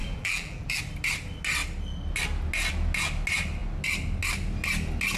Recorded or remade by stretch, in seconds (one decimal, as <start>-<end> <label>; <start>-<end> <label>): 0.0-0.8 remade; 0.8-5.2 recorded